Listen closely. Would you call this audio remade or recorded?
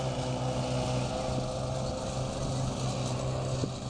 recorded